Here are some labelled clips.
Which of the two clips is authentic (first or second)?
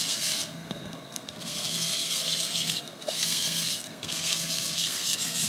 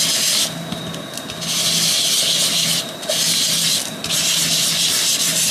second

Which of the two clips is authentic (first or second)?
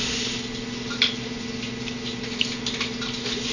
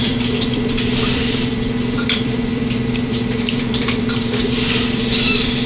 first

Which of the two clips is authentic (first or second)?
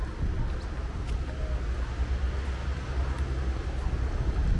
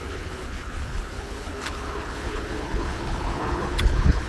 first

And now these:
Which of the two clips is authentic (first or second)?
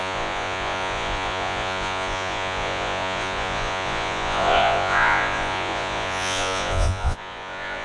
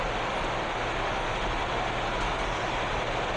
second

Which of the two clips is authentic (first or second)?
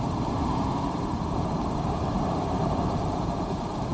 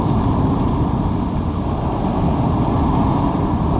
second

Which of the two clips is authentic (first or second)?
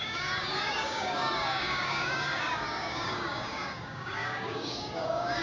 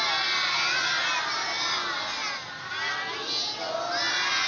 second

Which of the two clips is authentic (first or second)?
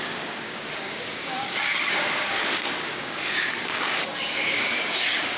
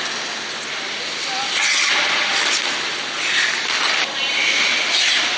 second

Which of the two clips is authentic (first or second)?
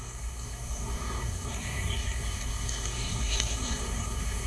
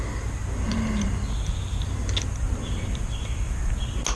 second